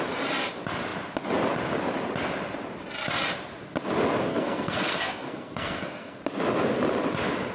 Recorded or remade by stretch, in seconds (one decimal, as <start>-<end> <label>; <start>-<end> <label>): 0.0-4.3 recorded; 4.3-6.2 remade; 6.2-7.5 recorded